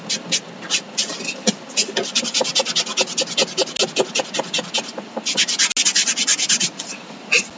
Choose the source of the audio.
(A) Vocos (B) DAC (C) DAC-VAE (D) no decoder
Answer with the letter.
D